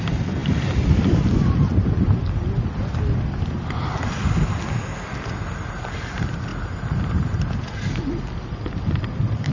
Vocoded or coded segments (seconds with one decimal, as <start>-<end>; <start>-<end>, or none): none